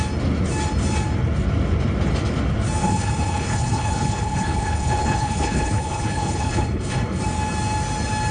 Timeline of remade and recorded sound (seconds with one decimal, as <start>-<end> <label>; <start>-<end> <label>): 0.0-2.8 recorded; 2.8-7.2 remade; 7.2-8.3 recorded